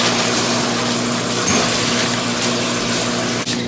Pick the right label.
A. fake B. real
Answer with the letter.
B